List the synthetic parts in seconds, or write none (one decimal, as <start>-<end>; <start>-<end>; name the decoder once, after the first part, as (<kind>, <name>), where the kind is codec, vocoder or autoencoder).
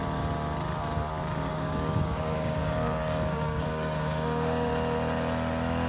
1.2-4.7 (codec, DAC)